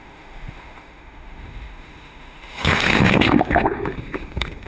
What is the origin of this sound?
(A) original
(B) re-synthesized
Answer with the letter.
B